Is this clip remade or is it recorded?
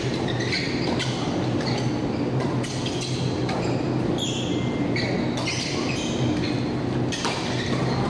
recorded